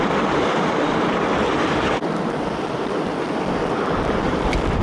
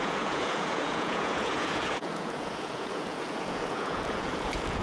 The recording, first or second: first